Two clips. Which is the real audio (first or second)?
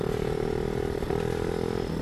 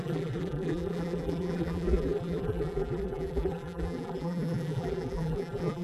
first